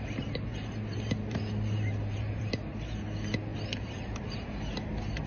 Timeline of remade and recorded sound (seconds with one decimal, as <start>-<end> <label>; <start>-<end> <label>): 0.0-0.5 recorded; 0.5-2.5 remade; 2.5-3.5 recorded; 3.5-4.2 remade; 4.2-5.3 recorded

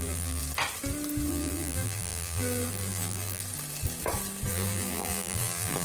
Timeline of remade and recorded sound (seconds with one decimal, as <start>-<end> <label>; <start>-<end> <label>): 0.0-0.4 remade; 0.4-1.3 recorded; 1.3-3.4 remade; 3.4-4.5 recorded; 4.5-5.8 remade

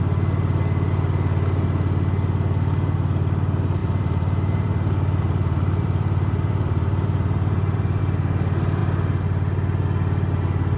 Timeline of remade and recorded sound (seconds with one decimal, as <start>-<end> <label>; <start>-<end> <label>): 0.0-3.8 recorded; 3.8-8.0 remade; 8.0-10.8 recorded

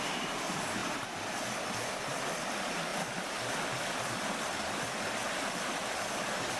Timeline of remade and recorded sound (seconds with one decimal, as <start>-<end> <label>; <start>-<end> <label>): 0.0-0.8 remade; 0.8-2.0 recorded; 2.0-2.9 remade; 2.9-3.9 recorded; 3.9-6.6 remade

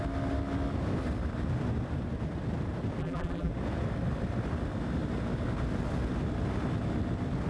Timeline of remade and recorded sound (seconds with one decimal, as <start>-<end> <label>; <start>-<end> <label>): 0.0-3.0 recorded; 3.0-3.5 remade; 3.5-7.5 recorded

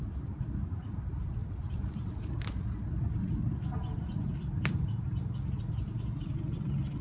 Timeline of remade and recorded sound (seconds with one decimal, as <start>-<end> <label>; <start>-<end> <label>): 0.0-1.4 recorded; 1.4-5.6 remade; 5.6-7.0 recorded

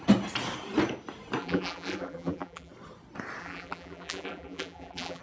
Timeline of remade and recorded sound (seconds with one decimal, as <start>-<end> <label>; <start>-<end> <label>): 0.0-1.4 recorded; 1.4-2.7 remade; 2.7-3.4 recorded; 3.4-5.2 remade

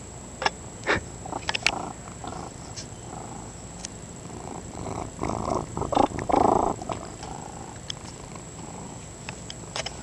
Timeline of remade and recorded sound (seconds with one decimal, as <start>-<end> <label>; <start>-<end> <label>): 0.0-2.3 recorded; 2.3-3.1 remade; 3.1-3.8 recorded; 3.8-8.4 remade; 8.4-10.0 recorded